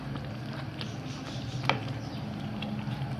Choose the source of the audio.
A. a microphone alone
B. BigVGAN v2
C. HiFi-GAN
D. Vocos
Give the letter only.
B